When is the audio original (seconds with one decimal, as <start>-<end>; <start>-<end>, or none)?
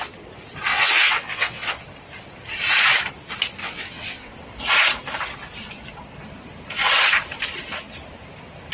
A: 0.0-0.7; 1.8-3.6; 4.3-8.7